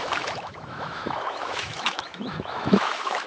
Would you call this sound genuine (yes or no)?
no